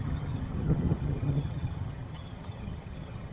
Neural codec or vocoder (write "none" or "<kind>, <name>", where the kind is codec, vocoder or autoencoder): vocoder, HiFi-GAN